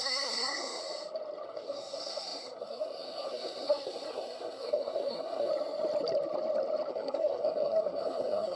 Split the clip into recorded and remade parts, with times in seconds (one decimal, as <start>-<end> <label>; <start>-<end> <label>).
0.0-0.8 remade; 0.8-1.5 recorded; 1.5-5.5 remade; 5.5-6.9 recorded; 6.9-8.6 remade